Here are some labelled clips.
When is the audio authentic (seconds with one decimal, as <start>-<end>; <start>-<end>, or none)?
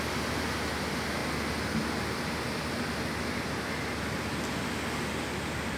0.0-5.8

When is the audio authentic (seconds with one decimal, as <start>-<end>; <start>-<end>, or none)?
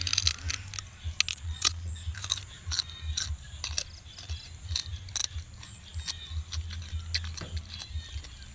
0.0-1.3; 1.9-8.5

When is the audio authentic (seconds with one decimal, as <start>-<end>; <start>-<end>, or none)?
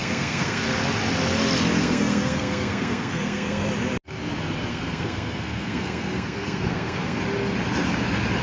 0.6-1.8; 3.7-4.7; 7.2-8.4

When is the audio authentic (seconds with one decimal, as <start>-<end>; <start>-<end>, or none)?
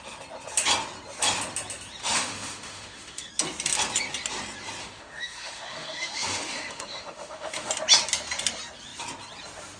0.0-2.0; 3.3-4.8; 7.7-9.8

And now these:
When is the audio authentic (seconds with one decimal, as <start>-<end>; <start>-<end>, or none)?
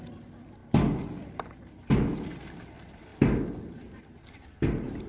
0.0-5.1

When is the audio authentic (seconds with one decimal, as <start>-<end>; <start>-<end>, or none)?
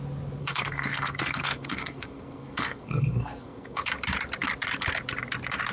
0.0-0.4; 3.8-5.7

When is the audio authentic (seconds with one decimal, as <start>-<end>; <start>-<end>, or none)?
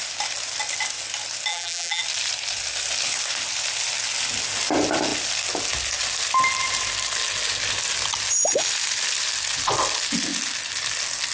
0.0-1.5; 2.0-11.3